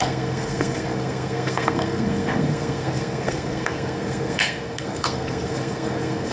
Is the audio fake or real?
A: fake